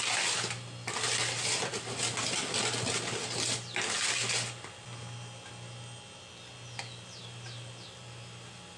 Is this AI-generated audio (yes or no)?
no